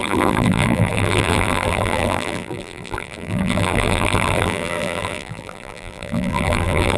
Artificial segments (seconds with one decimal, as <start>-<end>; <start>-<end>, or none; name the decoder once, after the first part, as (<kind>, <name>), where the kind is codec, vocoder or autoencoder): 0.0-7.0 (vocoder, BigVGAN v2)